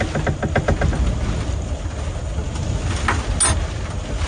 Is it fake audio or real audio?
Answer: real